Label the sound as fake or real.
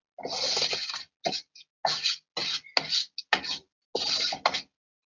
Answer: real